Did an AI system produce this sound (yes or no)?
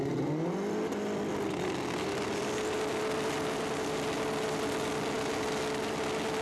no